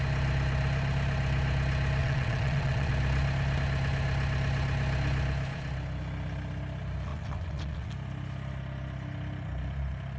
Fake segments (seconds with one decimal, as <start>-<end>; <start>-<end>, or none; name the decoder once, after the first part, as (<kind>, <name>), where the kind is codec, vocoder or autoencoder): 2.0-2.9 (vocoder, WaveNeXt); 7.1-7.9